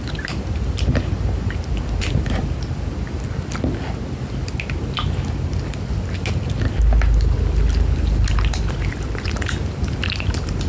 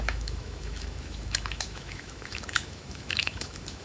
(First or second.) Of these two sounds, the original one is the first